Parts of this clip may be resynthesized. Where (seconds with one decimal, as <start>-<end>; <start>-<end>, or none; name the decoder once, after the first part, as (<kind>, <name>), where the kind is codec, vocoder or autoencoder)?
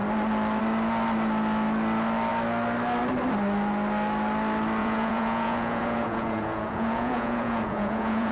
4.8-8.3 (vocoder, Vocos)